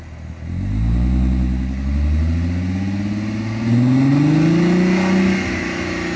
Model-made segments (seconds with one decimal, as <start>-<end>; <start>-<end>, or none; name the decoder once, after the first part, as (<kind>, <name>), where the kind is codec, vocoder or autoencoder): none